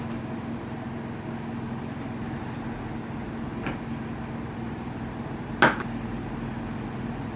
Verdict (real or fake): real